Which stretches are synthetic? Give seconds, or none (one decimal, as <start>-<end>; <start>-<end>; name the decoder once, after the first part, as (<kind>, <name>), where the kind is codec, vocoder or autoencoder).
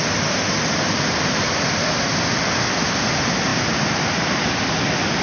none